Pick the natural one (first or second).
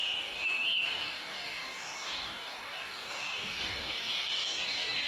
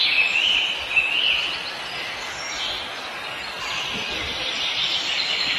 second